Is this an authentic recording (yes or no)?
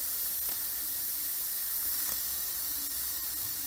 yes